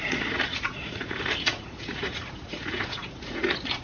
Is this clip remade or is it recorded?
remade